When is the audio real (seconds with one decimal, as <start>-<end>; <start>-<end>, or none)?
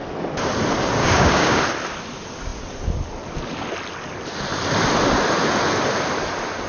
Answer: 0.0-1.0; 1.6-6.7